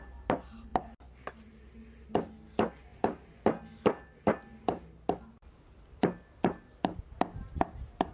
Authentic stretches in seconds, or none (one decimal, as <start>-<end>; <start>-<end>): 0.0-8.1